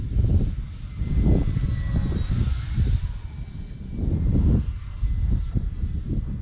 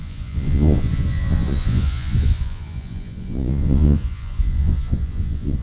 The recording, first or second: first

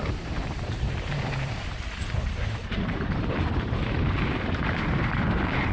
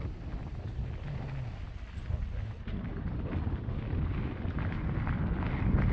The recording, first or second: second